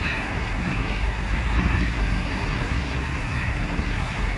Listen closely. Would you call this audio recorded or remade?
remade